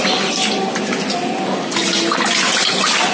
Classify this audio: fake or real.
real